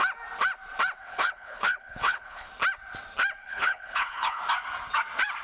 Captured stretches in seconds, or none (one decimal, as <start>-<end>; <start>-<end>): 0.0-1.0; 2.5-3.4; 4.4-5.4